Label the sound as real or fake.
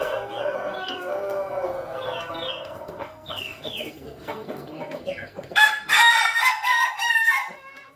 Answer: fake